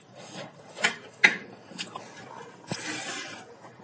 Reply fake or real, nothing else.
real